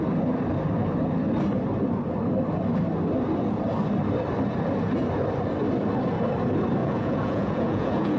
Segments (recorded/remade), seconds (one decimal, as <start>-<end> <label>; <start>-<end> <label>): 0.0-6.8 recorded; 6.8-8.2 remade